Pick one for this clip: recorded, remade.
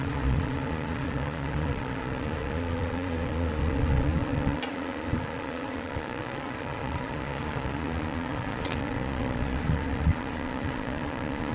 remade